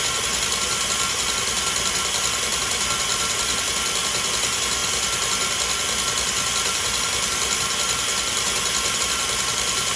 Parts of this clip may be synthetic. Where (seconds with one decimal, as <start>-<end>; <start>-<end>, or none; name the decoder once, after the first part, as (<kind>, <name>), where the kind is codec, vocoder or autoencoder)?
3.1-3.7 (vocoder, BigVGAN v2)